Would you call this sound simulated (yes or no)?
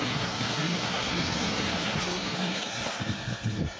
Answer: yes